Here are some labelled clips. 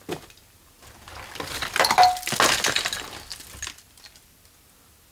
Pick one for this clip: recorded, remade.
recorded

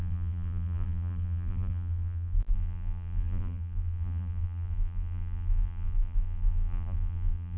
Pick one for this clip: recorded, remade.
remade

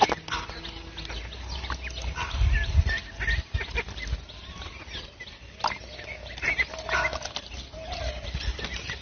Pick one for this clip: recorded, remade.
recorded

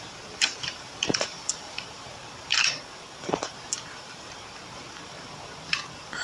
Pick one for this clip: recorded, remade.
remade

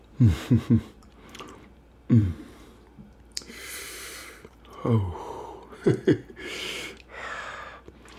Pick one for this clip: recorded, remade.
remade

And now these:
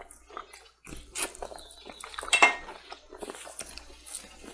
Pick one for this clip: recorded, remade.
recorded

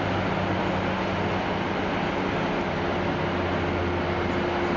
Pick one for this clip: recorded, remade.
recorded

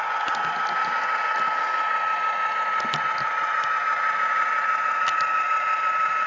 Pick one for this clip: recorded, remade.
recorded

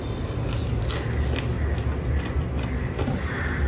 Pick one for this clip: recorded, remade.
recorded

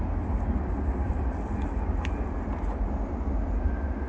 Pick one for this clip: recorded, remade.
recorded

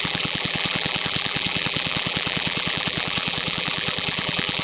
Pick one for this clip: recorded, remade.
remade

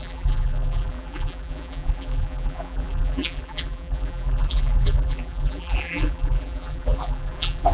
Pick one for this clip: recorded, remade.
remade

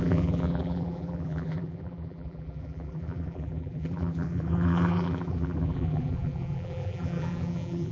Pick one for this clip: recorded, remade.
remade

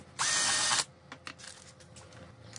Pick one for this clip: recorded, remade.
recorded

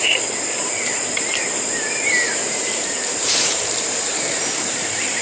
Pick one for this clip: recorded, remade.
remade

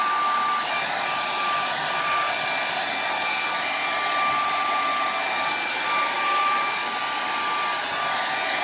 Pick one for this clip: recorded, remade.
recorded